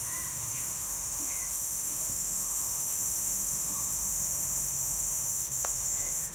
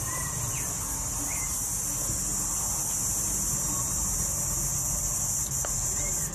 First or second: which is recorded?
second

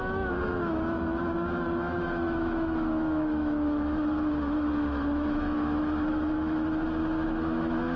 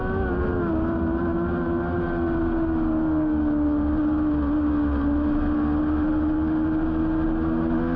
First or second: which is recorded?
second